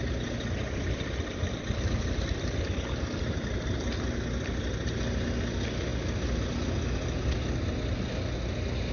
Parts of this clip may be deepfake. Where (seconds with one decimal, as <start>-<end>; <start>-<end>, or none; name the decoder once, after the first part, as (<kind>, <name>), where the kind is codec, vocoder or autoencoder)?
none